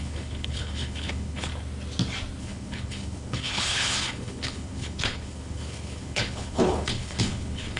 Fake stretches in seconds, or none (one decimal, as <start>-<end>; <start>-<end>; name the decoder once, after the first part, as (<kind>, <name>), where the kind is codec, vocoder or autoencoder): 0.0-1.5 (codec, HILCodec); 2.4-7.8